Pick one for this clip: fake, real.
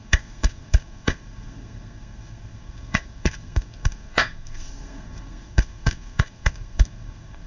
fake